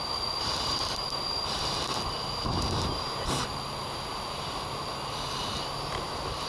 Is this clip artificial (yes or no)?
no